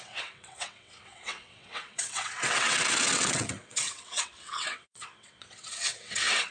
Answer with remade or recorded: remade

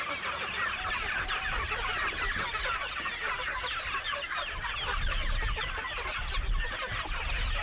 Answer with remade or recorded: recorded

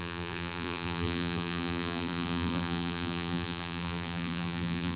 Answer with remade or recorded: remade